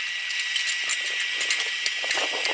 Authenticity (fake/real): real